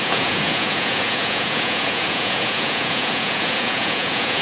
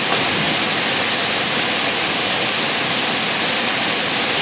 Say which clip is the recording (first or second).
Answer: second